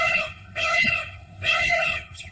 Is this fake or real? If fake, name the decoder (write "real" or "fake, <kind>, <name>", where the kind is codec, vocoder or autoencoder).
fake, codec, HILCodec